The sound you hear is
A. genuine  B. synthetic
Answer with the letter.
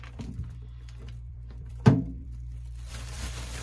B